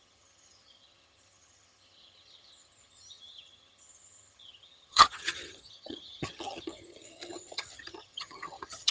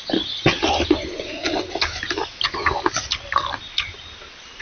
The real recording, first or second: second